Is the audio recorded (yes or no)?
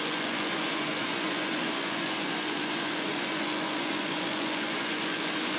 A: no